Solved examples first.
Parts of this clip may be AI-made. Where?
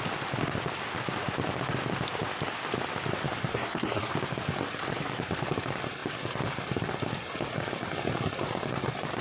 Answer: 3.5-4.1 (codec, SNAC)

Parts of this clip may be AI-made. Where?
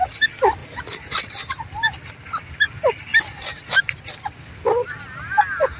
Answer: 0.6-1.2 (vocoder, BigVGAN v2)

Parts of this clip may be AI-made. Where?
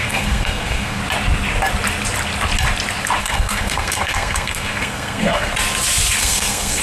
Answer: 0.0-1.0 (codec, SNAC); 3.2-5.5; 6.2-6.8